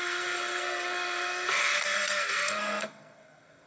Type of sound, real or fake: fake